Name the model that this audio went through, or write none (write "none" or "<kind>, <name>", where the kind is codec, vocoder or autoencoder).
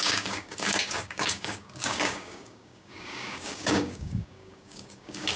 codec, DAC